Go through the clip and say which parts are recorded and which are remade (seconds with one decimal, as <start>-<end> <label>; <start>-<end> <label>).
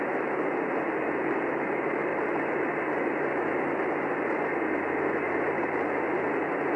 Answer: 0.0-6.8 recorded